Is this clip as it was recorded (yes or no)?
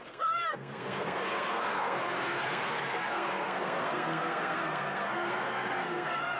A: no